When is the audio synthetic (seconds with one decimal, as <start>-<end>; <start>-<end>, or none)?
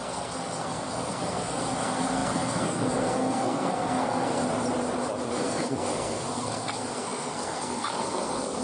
0.0-4.4; 5.3-8.6